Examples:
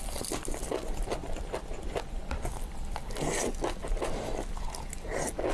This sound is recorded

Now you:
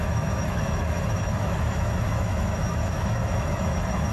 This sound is remade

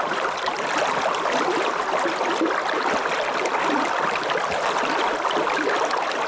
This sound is recorded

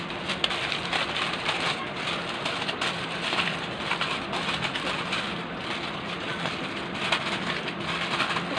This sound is recorded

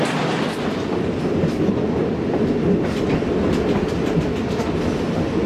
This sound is recorded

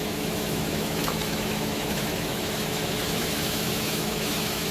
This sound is remade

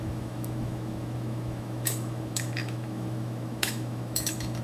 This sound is remade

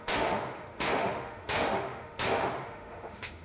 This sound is remade